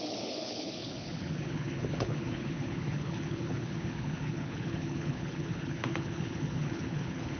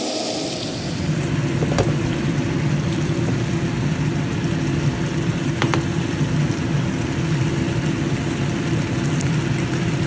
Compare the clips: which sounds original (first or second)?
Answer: second